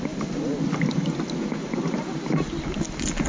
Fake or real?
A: real